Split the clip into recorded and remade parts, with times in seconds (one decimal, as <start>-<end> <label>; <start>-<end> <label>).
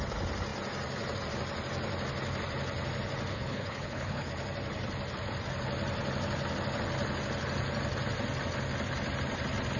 0.0-3.3 recorded; 3.3-4.3 remade; 4.3-9.8 recorded